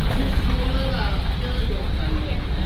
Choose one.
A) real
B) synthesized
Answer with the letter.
A